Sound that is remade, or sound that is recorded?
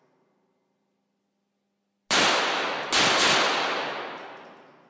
recorded